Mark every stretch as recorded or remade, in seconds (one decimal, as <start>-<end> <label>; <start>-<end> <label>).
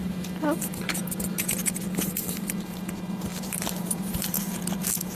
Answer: 0.0-3.3 recorded; 3.3-4.4 remade; 4.4-5.1 recorded